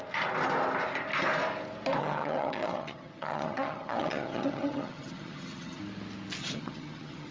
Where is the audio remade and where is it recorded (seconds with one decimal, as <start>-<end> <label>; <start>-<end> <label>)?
0.0-2.0 recorded; 2.0-5.8 remade; 5.8-6.4 recorded; 6.4-7.3 remade